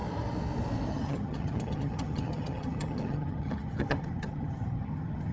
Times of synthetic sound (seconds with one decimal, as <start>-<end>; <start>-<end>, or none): 0.9-5.3